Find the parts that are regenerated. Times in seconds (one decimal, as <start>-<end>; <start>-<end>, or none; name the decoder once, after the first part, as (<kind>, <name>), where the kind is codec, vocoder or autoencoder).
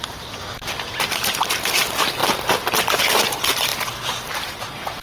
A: 0.0-0.4 (vocoder, BigVGAN v2); 1.1-3.7; 4.3-5.0